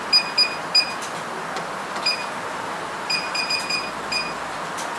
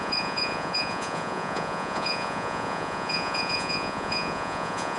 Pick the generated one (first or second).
second